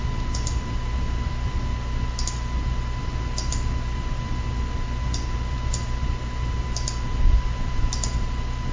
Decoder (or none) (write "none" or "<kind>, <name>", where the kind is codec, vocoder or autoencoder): none